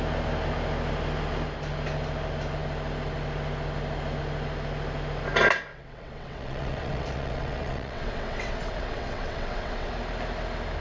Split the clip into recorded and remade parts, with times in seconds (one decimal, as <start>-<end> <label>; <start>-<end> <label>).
0.0-5.7 recorded; 5.7-9.9 remade; 9.9-10.8 recorded